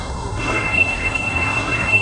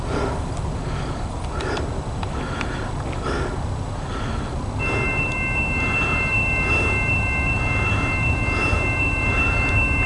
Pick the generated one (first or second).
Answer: first